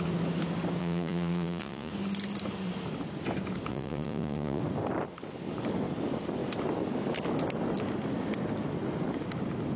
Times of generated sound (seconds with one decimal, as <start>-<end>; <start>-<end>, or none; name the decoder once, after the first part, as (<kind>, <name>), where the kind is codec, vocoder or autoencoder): 0.8-1.9 (vocoder, Vocos); 3.7-4.6